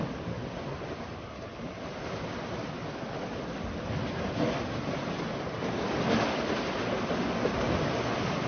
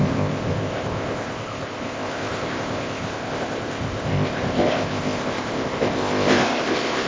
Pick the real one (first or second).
first